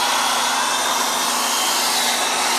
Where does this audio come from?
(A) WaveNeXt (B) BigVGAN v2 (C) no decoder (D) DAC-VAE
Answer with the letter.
C